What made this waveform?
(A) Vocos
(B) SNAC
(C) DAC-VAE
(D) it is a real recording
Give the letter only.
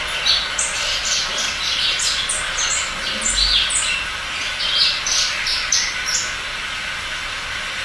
D